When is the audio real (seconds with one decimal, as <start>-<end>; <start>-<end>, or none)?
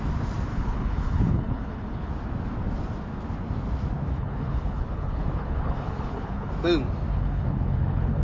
0.0-0.5; 2.1-4.1; 6.5-7.1